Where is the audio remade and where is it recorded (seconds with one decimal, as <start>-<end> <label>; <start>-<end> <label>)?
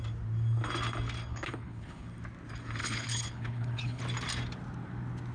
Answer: 0.0-1.3 recorded; 1.3-2.1 remade; 2.1-2.8 recorded; 2.8-4.0 remade; 4.0-5.3 recorded